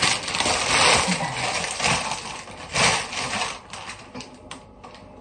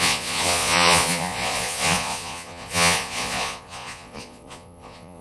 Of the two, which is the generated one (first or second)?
second